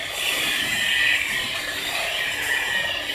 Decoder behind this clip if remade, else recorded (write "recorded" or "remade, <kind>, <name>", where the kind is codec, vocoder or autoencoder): remade, vocoder, BigVGAN v2